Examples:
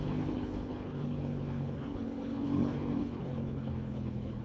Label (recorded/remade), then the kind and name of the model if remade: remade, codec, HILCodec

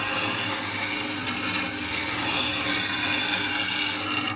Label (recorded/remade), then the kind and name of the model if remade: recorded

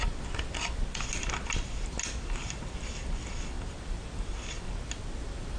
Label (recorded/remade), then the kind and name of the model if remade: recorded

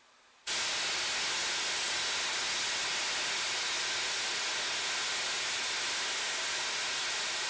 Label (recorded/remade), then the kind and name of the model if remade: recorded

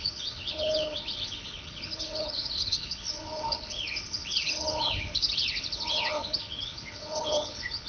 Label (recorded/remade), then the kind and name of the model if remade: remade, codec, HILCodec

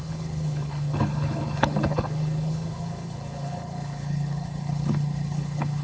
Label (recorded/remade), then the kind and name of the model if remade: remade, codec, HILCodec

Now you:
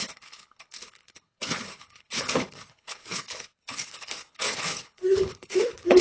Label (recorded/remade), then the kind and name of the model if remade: remade, codec, HILCodec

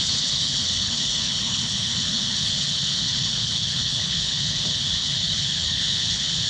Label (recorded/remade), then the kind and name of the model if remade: remade, codec, HILCodec